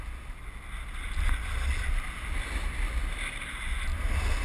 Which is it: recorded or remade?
recorded